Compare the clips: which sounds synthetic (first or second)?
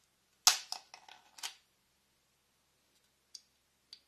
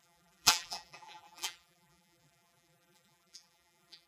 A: second